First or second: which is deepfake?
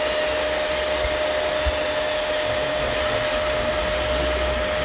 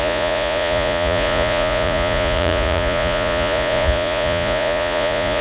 second